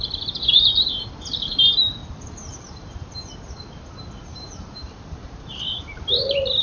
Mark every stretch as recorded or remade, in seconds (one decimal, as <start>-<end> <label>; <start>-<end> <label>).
0.0-2.0 recorded; 2.0-3.2 remade; 3.2-4.3 recorded; 4.3-5.6 remade; 5.6-6.6 recorded